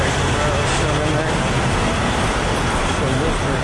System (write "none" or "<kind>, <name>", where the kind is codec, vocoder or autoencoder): none